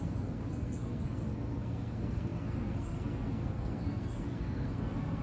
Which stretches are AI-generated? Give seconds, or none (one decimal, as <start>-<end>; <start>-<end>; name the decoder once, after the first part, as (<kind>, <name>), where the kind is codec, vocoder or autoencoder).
0.0-5.2 (codec, SNAC)